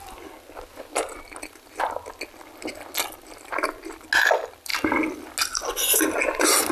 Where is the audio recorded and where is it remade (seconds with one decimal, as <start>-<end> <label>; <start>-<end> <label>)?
0.0-6.7 recorded